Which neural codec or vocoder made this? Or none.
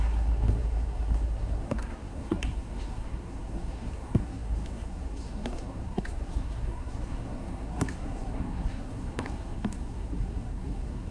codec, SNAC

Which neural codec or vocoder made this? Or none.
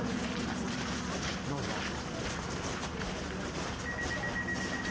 none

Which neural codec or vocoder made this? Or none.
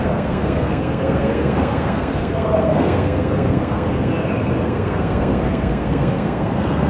codec, SNAC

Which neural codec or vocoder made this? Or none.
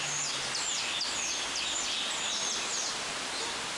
none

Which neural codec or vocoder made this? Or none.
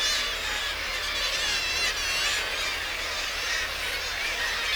none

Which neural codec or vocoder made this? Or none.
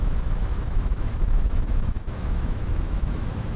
autoencoder, DAC-VAE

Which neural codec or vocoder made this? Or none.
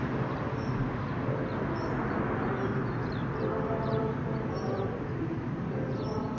none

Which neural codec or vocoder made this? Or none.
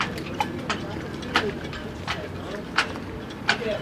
none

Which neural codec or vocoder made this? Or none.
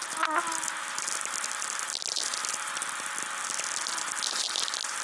none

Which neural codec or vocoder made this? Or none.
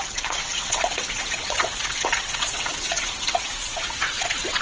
vocoder, WaveNeXt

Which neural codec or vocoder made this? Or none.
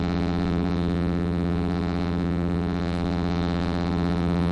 vocoder, BigVGAN v2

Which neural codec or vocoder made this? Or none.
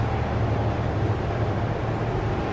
none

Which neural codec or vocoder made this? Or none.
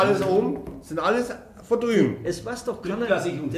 none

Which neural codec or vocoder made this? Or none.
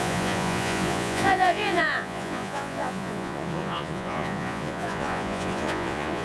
vocoder, Vocos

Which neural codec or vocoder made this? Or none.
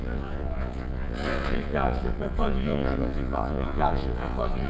vocoder, Vocos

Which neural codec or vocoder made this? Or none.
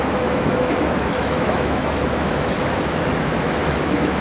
autoencoder, DAC-VAE